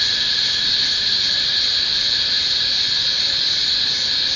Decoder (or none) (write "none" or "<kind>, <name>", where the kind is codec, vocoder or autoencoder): none